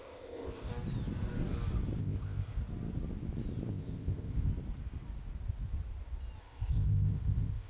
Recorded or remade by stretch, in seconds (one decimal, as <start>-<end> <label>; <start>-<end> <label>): 0.0-0.7 remade; 0.7-2.0 recorded; 2.0-2.6 remade; 2.6-3.7 recorded; 3.7-4.5 remade; 4.5-6.4 recorded; 6.4-7.7 remade